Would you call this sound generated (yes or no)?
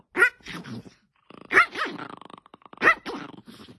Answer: no